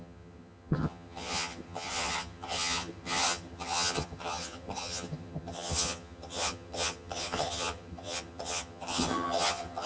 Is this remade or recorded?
remade